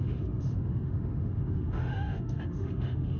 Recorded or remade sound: remade